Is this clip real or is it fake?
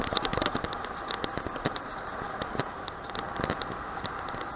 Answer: real